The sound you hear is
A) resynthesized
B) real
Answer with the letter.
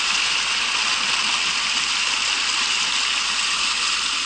B